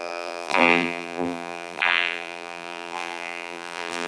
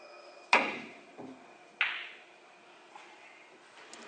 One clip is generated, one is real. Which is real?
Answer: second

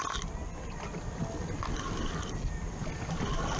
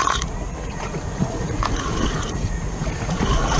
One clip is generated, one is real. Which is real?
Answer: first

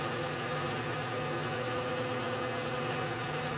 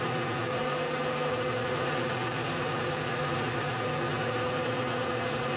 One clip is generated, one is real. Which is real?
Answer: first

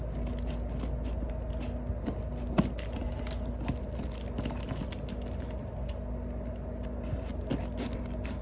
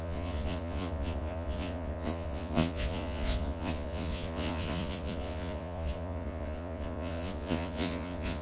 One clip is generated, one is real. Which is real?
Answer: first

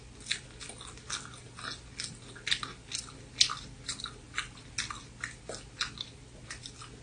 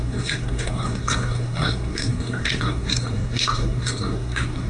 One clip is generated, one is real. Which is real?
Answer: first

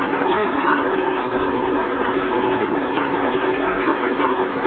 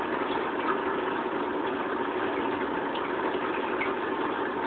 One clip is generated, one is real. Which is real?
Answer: second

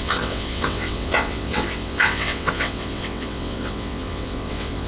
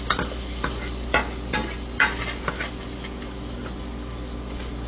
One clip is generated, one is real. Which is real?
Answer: second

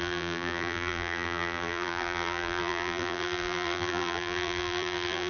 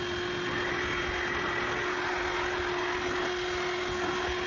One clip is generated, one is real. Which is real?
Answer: second